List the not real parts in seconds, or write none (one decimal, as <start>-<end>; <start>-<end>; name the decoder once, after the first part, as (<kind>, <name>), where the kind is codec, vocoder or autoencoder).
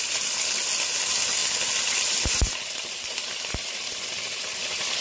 none